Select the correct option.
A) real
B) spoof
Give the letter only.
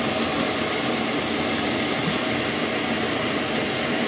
A